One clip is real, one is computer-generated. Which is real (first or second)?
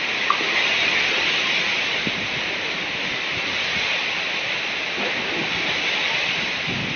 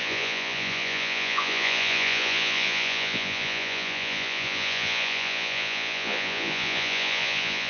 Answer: first